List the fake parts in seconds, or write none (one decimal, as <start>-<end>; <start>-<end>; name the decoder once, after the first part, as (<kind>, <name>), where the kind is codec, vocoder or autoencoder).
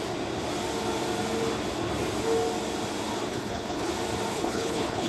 3.3-3.9 (codec, HILCodec); 4.3-5.1